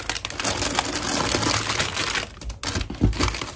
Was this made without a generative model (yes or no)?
yes